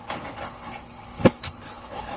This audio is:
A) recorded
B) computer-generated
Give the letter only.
B